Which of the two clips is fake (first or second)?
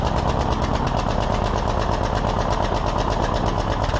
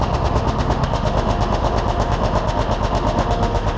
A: second